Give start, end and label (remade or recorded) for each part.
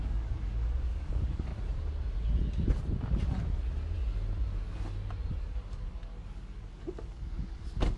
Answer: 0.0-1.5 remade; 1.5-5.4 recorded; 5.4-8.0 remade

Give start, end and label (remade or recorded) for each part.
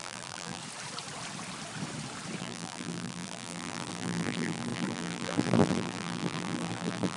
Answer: 0.0-0.6 remade; 0.6-2.4 recorded; 2.4-7.2 remade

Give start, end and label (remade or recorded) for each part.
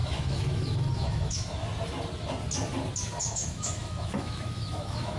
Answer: 0.0-1.7 remade; 1.7-3.2 recorded; 3.2-5.2 remade